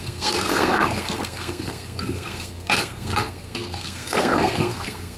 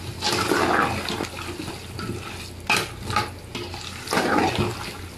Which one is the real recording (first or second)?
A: second